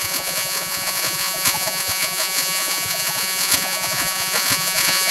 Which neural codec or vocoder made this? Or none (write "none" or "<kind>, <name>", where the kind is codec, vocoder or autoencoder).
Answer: vocoder, Vocos